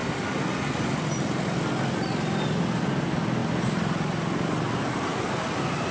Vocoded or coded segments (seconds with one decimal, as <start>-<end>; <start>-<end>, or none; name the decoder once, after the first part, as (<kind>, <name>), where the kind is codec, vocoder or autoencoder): none